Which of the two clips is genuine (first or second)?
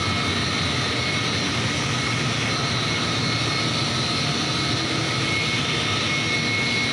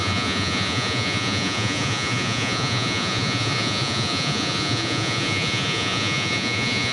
first